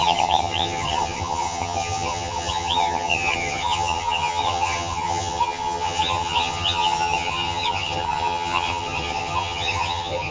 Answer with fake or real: fake